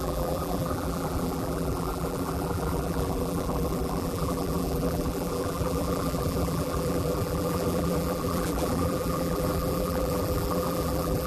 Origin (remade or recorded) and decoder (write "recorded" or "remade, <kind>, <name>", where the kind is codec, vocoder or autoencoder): remade, vocoder, BigVGAN v2